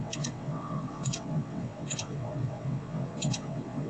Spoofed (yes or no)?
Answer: yes